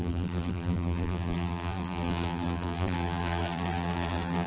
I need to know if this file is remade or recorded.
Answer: remade